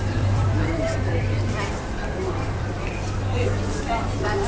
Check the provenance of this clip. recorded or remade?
remade